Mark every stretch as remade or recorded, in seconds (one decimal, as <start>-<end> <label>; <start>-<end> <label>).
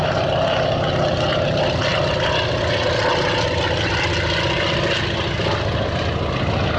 0.0-6.8 recorded